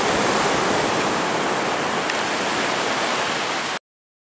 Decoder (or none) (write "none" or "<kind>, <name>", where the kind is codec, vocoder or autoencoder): none